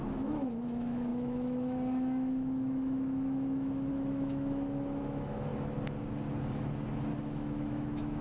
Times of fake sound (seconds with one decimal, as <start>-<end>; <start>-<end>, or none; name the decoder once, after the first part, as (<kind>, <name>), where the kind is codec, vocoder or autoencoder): 0.0-5.5 (autoencoder, DAC-VAE); 7.2-8.2